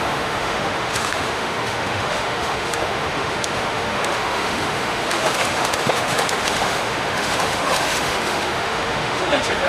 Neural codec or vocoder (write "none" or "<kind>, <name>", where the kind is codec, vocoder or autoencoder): autoencoder, DAC-VAE